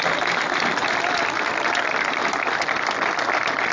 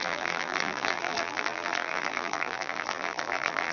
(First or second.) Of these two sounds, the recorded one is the first